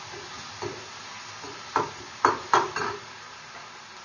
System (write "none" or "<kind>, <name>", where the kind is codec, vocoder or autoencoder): none